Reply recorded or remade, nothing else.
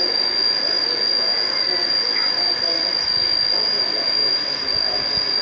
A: recorded